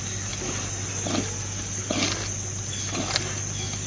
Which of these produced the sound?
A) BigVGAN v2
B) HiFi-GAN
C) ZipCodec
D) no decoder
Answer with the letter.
D